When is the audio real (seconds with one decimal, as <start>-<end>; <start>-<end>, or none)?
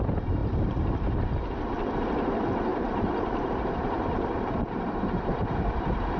0.0-0.4; 1.1-2.7; 5.8-6.2